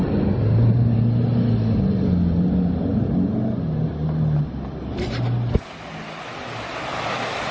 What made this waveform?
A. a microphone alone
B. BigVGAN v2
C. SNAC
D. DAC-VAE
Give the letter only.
A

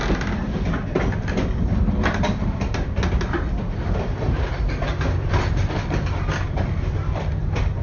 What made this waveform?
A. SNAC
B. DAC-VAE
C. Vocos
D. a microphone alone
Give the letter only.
D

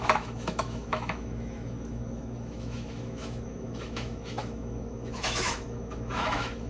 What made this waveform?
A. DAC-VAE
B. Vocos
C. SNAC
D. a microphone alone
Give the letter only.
A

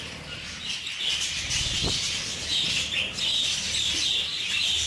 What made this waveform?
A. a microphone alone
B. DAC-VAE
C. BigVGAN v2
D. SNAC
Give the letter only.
A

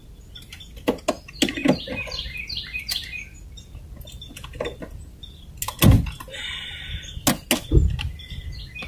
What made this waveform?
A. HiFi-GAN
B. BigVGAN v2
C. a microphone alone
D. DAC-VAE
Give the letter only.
C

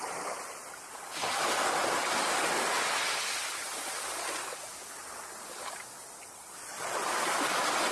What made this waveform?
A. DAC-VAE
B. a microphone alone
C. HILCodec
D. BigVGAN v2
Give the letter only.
B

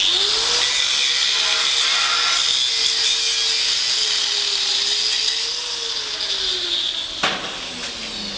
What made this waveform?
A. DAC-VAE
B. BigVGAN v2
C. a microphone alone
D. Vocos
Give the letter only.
C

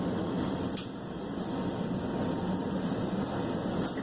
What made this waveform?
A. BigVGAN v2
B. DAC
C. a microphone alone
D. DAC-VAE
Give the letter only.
C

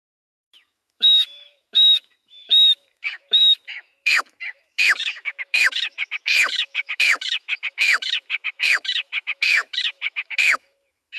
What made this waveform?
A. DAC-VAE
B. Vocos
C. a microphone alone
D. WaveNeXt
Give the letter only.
A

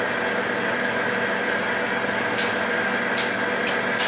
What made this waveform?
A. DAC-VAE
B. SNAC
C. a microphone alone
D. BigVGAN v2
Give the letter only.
C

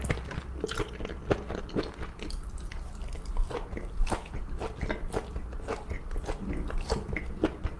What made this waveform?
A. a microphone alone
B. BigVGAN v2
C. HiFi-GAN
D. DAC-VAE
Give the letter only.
A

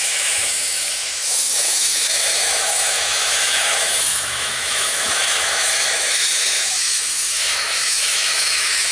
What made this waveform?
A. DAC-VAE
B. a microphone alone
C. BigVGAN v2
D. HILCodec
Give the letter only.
A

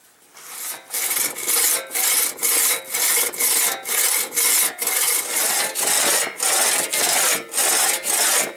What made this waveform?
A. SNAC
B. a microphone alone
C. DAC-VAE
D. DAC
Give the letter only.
B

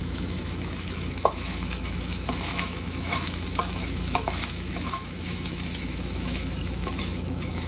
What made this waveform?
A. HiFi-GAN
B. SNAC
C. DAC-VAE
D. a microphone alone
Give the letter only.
C